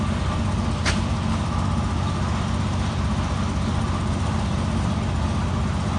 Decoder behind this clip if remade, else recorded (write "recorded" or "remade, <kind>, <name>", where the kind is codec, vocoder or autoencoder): recorded